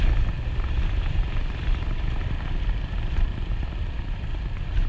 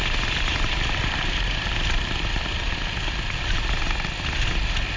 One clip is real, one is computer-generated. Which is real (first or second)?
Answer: second